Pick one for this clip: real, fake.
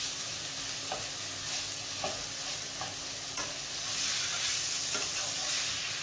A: real